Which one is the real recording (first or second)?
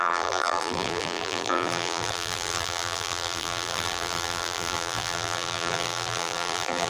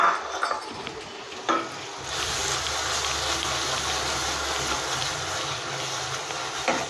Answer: second